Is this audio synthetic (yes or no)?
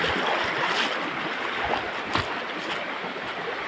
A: no